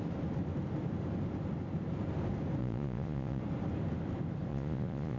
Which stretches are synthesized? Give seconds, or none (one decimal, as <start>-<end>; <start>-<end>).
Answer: 2.6-3.4; 4.5-5.2